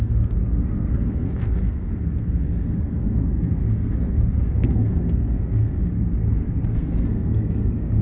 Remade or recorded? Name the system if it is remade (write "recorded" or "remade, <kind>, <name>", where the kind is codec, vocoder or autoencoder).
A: remade, codec, SNAC